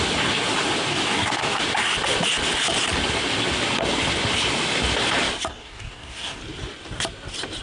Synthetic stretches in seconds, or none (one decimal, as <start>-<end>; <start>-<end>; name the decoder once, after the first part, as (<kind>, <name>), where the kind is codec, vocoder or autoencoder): 0.9-1.6 (codec, DAC); 5.5-6.4